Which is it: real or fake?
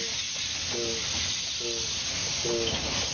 real